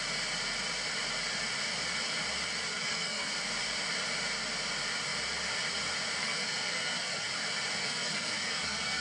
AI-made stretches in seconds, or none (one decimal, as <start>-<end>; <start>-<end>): 2.7-3.3; 6.2-7.3; 7.8-9.0